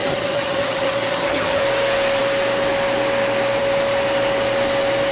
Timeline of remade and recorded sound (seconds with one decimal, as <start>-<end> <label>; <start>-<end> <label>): 0.0-1.6 remade; 1.6-5.1 recorded